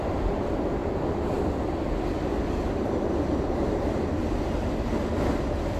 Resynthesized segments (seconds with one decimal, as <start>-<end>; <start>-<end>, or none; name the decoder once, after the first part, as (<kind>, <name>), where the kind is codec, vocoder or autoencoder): none